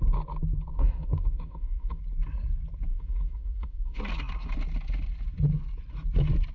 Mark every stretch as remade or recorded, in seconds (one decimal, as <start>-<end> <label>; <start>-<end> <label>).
0.0-0.7 recorded; 0.7-2.0 remade; 2.0-2.9 recorded; 2.9-4.0 remade; 4.0-6.5 recorded